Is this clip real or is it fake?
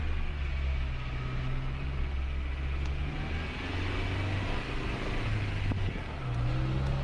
real